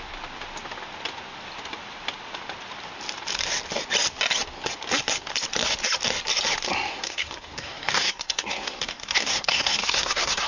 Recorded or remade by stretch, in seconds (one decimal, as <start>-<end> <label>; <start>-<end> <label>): 0.0-6.9 recorded; 6.9-10.5 remade